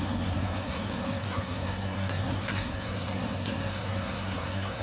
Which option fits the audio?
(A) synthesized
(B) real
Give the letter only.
A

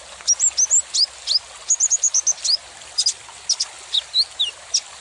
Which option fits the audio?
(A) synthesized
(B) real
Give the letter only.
B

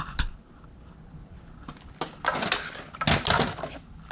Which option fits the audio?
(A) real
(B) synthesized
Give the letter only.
A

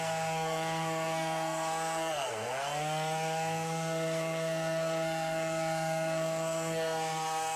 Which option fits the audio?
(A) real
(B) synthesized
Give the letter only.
B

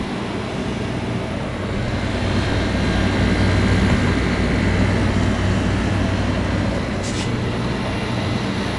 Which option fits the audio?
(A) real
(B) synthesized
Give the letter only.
A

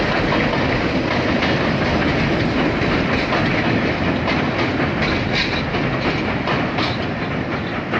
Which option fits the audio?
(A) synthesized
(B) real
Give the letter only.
B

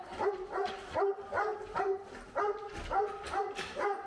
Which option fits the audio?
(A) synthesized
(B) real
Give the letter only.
B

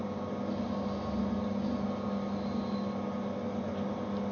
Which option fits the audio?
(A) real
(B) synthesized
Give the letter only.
A